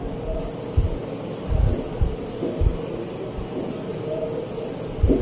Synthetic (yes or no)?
no